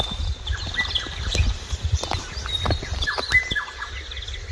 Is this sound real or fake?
real